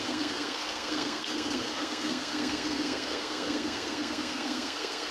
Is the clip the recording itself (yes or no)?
no